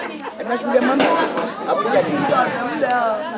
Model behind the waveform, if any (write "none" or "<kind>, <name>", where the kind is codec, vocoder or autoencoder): none